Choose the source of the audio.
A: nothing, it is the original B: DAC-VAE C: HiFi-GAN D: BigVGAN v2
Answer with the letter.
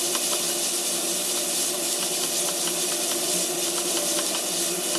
A